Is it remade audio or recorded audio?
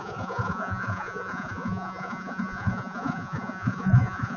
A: remade